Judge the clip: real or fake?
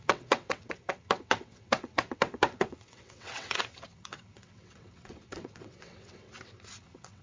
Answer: fake